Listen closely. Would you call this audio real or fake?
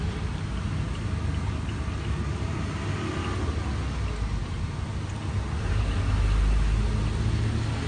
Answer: real